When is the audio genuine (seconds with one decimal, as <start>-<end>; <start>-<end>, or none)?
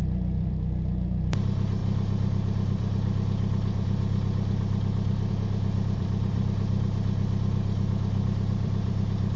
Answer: none